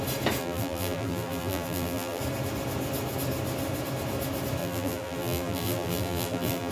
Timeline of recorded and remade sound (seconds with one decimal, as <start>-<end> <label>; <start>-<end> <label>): 0.0-0.4 recorded; 0.4-2.2 remade; 2.2-4.6 recorded; 4.6-6.7 remade